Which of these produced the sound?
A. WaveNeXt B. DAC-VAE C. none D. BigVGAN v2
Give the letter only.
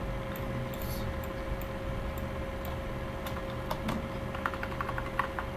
C